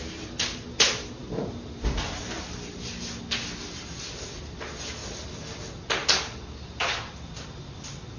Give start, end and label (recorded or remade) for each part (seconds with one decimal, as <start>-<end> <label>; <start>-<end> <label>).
0.0-8.2 recorded